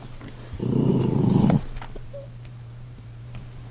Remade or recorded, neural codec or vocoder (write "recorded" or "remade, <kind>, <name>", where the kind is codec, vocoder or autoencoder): remade, vocoder, BigVGAN v2